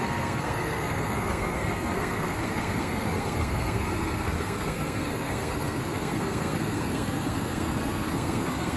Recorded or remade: remade